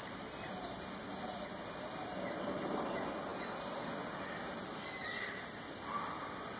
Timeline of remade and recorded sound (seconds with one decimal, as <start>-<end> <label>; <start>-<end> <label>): 0.0-1.3 remade; 1.3-6.6 recorded